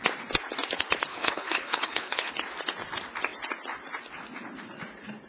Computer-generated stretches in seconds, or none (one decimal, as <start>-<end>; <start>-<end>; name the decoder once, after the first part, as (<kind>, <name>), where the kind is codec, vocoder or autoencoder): 1.1-2.3 (codec, HILCodec)